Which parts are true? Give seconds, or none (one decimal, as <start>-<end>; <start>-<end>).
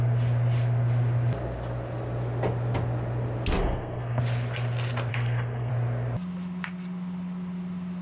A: 0.0-3.6; 4.2-5.1; 5.7-8.0